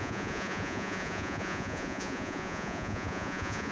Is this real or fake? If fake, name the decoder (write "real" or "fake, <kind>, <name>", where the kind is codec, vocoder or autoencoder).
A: fake, vocoder, Vocos